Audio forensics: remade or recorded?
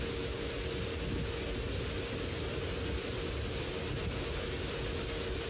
recorded